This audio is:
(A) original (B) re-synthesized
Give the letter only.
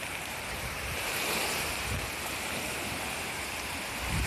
A